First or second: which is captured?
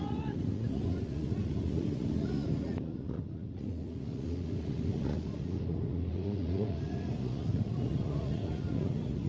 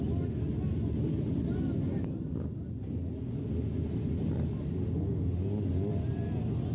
second